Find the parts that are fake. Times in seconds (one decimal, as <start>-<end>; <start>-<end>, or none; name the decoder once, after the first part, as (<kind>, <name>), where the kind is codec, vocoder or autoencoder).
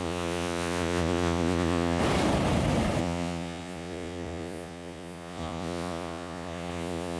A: 0.0-2.0 (vocoder, Vocos); 3.0-7.2